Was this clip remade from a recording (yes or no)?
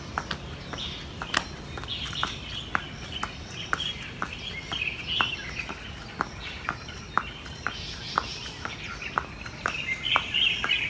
no